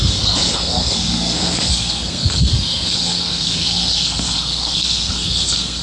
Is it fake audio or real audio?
fake